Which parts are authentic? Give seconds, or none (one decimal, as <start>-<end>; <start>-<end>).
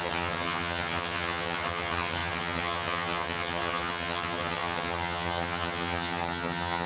none